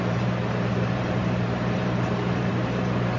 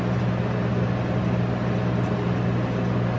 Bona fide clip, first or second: second